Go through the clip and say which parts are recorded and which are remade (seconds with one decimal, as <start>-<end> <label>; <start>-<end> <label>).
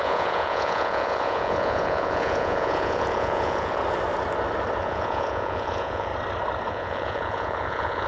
0.0-3.8 remade; 3.8-4.8 recorded; 4.8-6.1 remade; 6.1-6.7 recorded; 6.7-8.1 remade